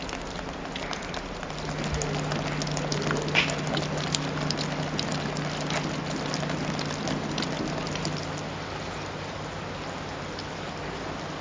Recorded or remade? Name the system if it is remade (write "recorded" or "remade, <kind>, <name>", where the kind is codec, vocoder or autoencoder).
recorded